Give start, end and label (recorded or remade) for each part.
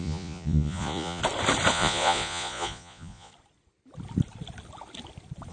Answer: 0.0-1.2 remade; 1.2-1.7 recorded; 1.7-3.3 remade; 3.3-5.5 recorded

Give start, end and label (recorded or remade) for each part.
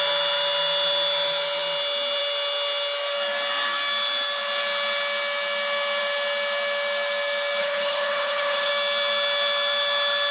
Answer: 0.0-7.6 recorded; 7.6-8.7 remade; 8.7-10.3 recorded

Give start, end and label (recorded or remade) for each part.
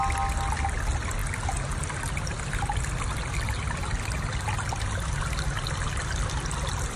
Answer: 0.0-7.0 recorded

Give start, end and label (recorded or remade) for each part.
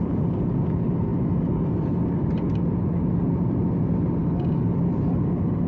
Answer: 0.0-5.7 recorded